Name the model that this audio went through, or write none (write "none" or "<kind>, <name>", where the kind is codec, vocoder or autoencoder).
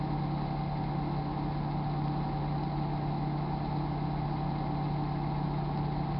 none